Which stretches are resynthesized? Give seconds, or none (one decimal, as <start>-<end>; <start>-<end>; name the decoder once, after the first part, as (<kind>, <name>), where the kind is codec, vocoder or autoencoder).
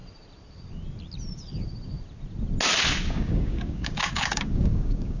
3.1-5.2 (codec, DAC)